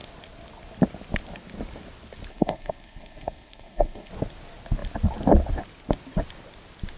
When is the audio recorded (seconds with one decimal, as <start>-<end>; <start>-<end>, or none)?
0.0-2.3; 4.1-7.0